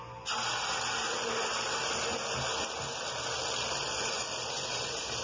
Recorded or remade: recorded